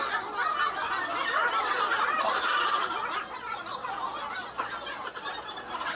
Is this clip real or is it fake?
real